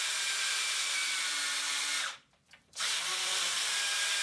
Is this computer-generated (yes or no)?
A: yes